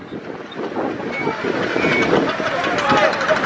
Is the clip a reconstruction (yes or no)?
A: no